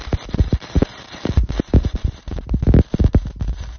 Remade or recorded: remade